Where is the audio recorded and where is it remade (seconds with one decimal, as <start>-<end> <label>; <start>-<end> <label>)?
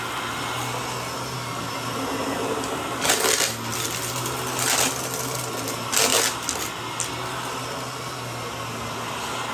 0.0-9.5 recorded